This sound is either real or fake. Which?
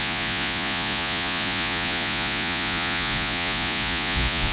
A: fake